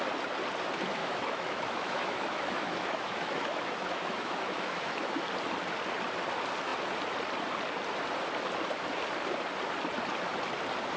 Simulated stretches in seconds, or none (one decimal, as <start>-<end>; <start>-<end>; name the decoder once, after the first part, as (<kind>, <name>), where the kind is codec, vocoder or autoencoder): 1.0-5.3 (autoencoder, DAC-VAE)